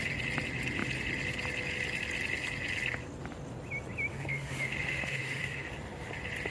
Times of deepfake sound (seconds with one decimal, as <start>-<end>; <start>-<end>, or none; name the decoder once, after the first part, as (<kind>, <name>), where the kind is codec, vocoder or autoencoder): 4.1-5.7 (autoencoder, DAC-VAE)